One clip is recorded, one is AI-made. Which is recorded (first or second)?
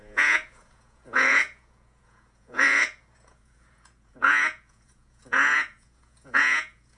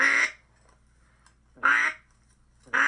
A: second